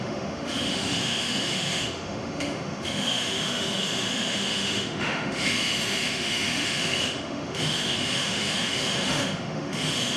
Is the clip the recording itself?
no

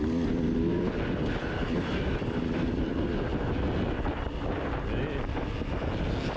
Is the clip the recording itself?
yes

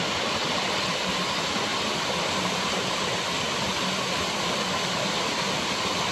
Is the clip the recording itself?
yes